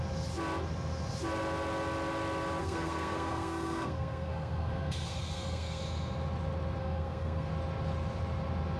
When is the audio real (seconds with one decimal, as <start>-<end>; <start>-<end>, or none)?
0.0-2.6; 5.8-6.8; 7.5-8.8